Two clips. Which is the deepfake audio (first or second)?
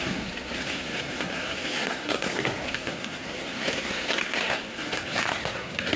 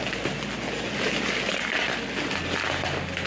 first